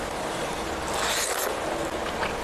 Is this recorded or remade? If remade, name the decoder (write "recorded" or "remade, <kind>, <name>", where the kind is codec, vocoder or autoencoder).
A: recorded